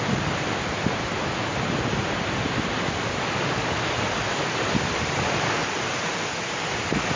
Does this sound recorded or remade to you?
recorded